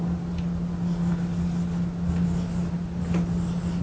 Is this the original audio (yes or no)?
yes